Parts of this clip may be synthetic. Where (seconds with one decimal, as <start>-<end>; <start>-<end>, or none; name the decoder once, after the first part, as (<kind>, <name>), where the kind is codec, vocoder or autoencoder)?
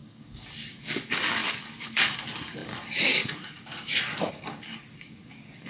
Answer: 0.0-5.7 (codec, DAC)